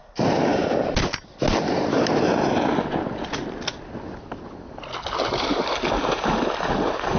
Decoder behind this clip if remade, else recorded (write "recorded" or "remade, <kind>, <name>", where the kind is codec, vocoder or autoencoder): recorded